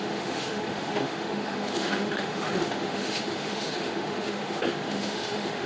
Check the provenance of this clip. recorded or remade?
remade